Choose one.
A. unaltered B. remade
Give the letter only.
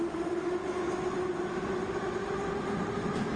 A